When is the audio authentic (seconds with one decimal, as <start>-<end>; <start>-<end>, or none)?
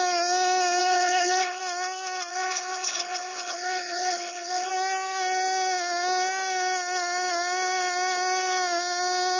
0.0-0.8; 1.6-2.3; 4.7-9.4